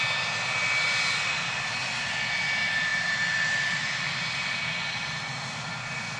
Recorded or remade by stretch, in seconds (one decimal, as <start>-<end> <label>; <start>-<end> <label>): 0.0-6.2 recorded